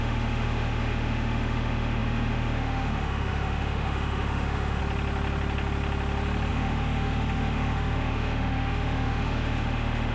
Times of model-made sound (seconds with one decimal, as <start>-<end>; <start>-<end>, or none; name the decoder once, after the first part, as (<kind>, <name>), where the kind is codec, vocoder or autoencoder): 0.0-4.8 (autoencoder, DAC-VAE); 6.5-10.1